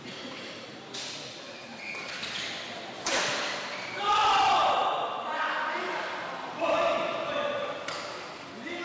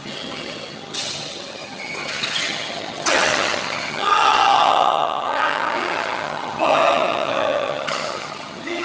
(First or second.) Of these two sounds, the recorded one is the first